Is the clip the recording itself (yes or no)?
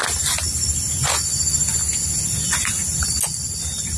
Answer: yes